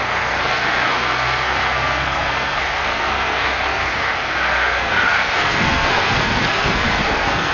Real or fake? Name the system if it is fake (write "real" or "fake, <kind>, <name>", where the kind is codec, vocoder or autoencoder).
fake, codec, SNAC